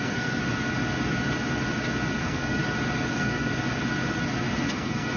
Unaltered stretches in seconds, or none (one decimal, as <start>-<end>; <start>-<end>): 0.4-2.2; 2.6-3.1; 3.5-4.7